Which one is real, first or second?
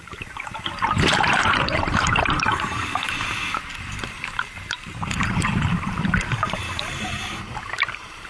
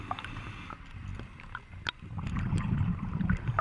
second